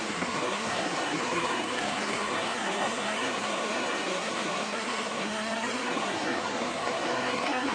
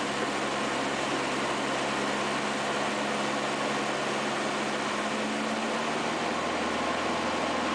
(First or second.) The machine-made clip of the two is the first